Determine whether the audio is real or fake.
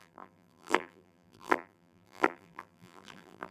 fake